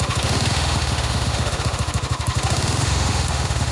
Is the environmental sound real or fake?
fake